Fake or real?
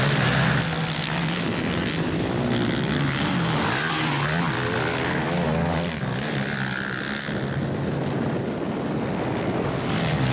real